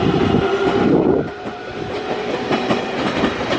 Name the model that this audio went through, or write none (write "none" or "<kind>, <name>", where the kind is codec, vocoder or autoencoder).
vocoder, BigVGAN v2